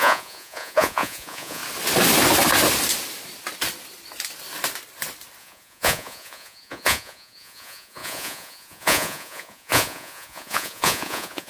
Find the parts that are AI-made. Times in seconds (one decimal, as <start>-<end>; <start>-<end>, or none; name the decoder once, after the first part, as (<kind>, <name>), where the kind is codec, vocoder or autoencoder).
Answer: 0.0-1.6 (vocoder, Vocos); 5.4-11.5